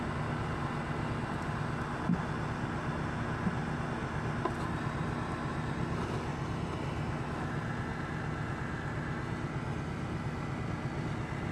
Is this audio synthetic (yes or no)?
no